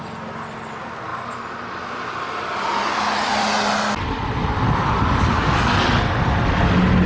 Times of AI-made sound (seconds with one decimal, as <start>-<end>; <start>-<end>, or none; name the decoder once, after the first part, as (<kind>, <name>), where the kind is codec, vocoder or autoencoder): none